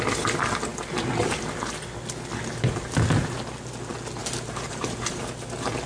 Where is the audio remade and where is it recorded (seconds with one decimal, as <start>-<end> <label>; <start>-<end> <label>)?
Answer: 0.0-4.2 recorded; 4.2-5.2 remade; 5.2-5.9 recorded